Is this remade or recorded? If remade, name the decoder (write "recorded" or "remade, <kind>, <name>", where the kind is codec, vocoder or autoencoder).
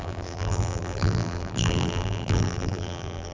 remade, vocoder, BigVGAN v2